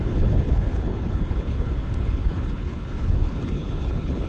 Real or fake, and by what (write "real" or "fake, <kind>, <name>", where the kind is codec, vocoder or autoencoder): fake, codec, HILCodec